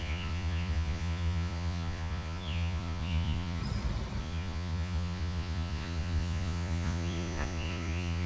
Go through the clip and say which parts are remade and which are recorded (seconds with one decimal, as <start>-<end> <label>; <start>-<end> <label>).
0.0-3.6 remade; 3.6-4.2 recorded; 4.2-8.3 remade

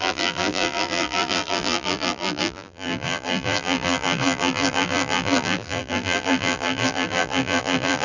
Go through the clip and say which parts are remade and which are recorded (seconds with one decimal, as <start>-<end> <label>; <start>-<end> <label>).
0.0-8.0 remade

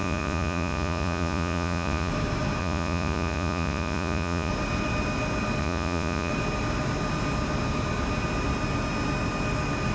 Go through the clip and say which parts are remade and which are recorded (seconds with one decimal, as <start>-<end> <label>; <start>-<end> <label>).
0.0-2.1 remade; 2.1-2.6 recorded; 2.6-4.5 remade; 4.5-5.6 recorded; 5.6-6.3 remade; 6.3-9.9 recorded